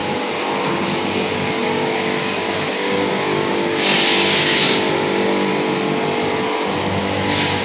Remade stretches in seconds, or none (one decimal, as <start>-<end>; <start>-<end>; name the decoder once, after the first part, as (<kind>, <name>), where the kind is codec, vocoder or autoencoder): 0.0-5.5 (codec, DAC); 7.0-7.6